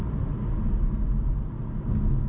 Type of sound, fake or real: real